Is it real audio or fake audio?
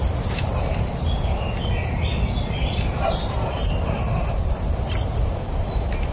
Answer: real